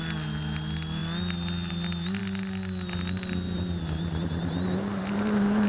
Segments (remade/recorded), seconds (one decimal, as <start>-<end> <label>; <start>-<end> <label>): 0.0-5.7 recorded